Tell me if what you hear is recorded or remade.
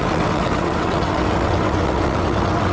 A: remade